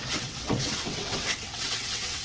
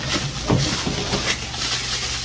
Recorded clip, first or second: second